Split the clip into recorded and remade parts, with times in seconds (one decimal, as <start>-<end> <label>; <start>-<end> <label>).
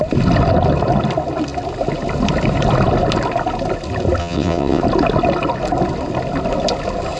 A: 0.0-4.2 recorded; 4.2-4.8 remade; 4.8-7.2 recorded